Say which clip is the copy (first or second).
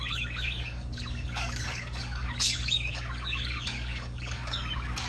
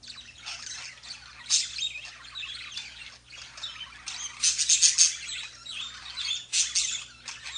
first